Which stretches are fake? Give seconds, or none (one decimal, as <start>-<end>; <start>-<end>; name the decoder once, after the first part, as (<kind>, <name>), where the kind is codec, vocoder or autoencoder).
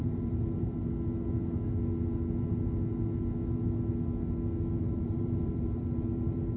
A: 0.0-0.8 (vocoder, BigVGAN v2); 4.8-6.6